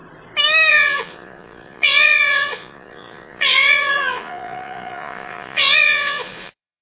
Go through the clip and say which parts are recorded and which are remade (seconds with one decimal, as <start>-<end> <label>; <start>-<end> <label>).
0.0-0.7 recorded; 0.7-6.8 remade